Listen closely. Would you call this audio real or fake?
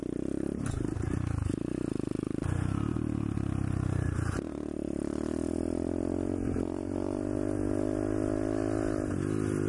real